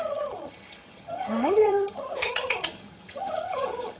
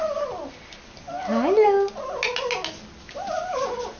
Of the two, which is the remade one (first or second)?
first